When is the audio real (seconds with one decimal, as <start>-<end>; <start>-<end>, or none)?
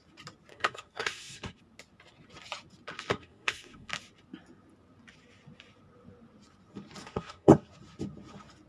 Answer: 0.0-0.5; 1.6-3.1; 3.9-7.0; 7.7-8.7